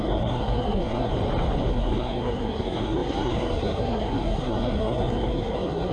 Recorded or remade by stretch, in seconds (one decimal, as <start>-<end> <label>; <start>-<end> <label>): 0.0-1.1 remade; 1.1-1.7 recorded; 1.7-5.9 remade